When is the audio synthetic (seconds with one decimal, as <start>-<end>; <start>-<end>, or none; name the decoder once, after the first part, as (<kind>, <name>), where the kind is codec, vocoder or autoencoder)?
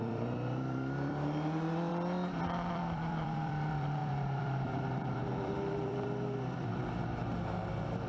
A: 0.0-1.9 (vocoder, BigVGAN v2); 2.7-7.2